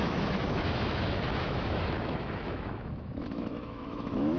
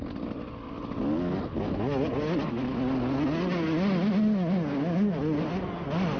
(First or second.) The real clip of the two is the second